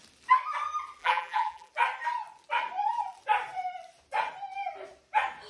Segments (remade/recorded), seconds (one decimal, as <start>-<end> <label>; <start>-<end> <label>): 0.0-1.0 recorded; 1.0-1.7 remade; 1.7-5.5 recorded